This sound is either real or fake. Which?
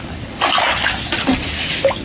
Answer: real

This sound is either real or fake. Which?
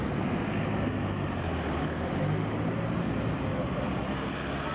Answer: real